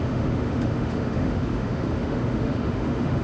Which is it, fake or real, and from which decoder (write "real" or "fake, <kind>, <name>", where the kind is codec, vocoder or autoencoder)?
fake, autoencoder, DAC-VAE